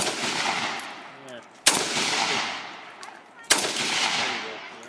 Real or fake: real